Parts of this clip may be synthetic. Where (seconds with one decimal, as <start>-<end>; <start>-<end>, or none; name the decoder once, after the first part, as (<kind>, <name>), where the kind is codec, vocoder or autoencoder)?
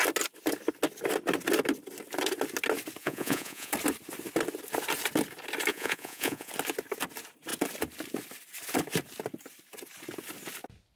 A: 3.0-3.7 (vocoder, Vocos); 5.7-6.5